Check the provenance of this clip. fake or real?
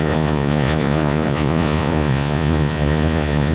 fake